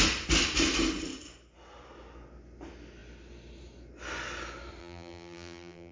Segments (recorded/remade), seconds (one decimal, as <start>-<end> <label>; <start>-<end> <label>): 0.0-4.8 recorded; 4.8-5.9 remade